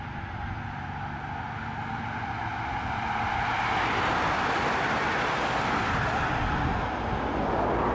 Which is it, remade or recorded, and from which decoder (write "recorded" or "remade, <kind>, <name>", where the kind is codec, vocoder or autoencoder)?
recorded